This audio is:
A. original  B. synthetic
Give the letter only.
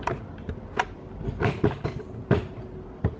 A